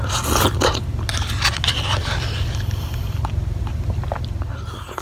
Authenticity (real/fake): real